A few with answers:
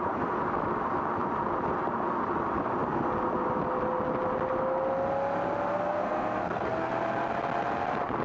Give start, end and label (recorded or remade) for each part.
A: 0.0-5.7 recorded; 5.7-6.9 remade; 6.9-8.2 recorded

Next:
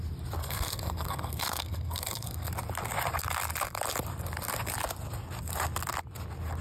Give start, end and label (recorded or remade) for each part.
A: 0.0-0.4 recorded; 0.4-2.5 remade; 2.5-6.6 recorded